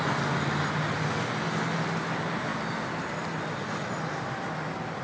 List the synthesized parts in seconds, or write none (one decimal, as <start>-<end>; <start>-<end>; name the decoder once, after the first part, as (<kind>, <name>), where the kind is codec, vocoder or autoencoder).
none